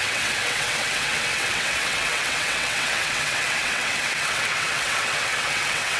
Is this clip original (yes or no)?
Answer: no